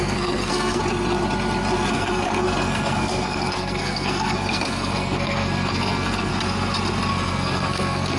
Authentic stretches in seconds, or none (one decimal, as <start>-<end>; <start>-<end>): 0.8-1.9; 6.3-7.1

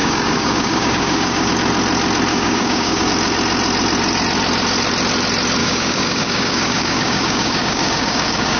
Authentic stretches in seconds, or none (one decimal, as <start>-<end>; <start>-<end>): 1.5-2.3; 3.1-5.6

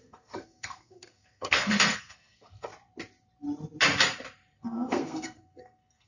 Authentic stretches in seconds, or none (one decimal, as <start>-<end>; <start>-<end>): 2.7-4.6

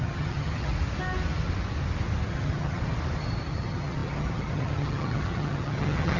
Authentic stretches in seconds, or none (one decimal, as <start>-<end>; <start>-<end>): 0.7-2.3; 2.8-3.5

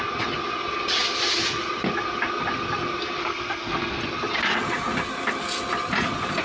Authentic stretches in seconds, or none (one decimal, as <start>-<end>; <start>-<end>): 0.0-3.2; 4.0-6.4

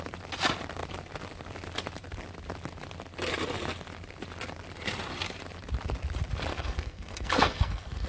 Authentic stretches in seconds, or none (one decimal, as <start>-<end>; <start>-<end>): 0.0-6.5